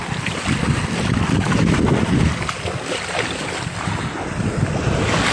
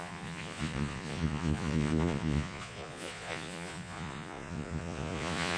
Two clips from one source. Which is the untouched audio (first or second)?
first